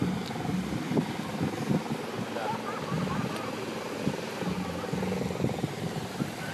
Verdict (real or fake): real